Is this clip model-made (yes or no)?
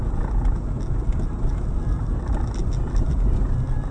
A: no